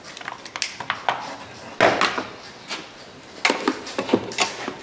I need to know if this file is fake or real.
real